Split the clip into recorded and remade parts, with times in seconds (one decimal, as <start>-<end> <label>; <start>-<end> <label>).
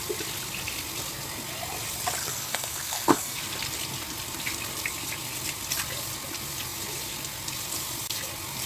0.0-2.2 recorded; 2.2-3.4 remade; 3.4-8.7 recorded